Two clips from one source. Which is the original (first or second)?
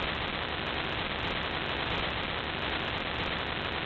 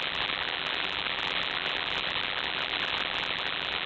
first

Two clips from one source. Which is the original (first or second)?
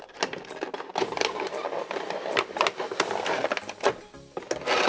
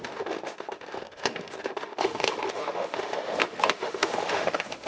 first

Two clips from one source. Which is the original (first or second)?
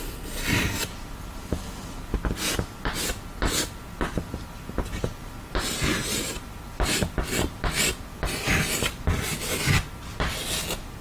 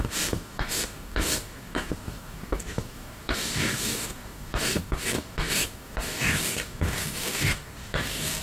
first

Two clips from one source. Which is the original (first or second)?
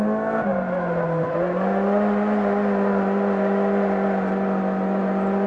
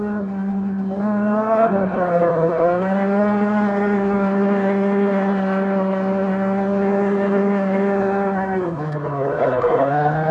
first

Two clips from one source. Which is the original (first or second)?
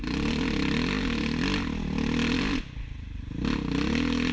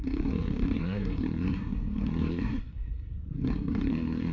first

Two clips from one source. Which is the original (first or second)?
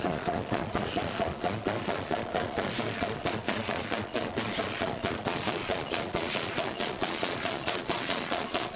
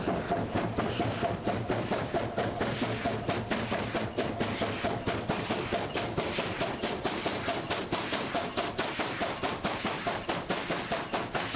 second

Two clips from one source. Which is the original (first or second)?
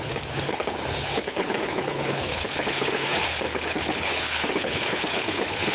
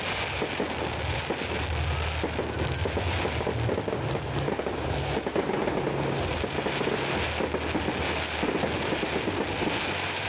second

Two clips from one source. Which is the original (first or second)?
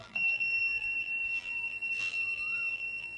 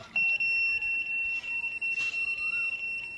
second